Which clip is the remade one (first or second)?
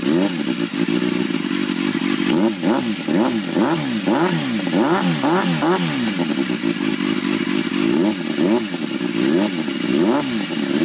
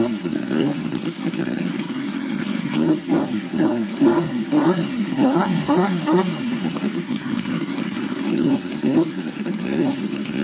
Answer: second